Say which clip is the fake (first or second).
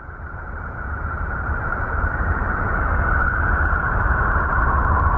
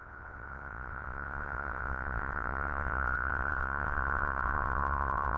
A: second